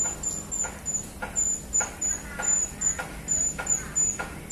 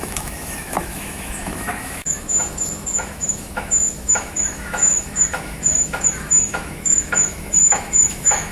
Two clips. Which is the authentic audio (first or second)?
first